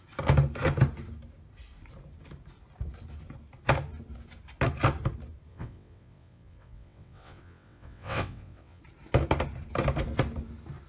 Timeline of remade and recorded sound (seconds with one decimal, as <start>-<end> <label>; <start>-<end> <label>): 0.0-5.5 recorded; 5.5-8.8 remade; 8.8-10.9 recorded